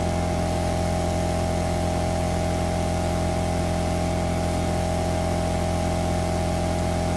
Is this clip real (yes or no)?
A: yes